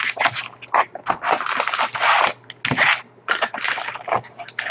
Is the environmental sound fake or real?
real